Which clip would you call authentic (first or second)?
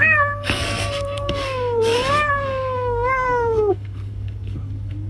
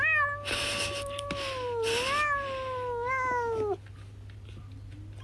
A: second